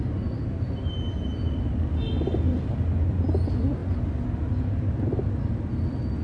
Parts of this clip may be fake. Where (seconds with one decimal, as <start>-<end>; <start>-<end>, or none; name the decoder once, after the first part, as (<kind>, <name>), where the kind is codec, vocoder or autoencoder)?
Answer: none